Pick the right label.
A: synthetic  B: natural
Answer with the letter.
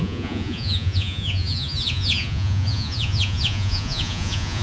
A